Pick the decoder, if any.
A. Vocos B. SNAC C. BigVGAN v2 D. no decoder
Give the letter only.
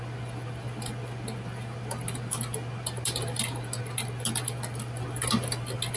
D